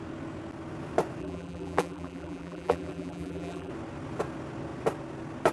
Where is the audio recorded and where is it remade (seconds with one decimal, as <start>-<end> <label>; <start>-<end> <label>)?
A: 0.0-1.2 recorded; 1.2-3.7 remade; 3.7-5.5 recorded